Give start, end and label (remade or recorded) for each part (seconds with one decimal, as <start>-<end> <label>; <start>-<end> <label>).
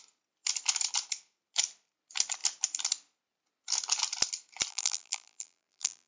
0.0-4.7 recorded; 4.7-6.1 remade